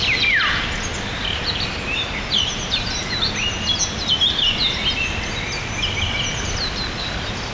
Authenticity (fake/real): real